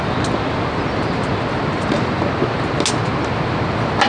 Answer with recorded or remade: recorded